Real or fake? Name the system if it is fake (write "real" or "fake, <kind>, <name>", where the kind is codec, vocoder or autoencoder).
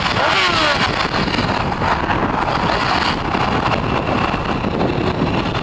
real